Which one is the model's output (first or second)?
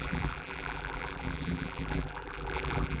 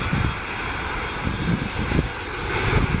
first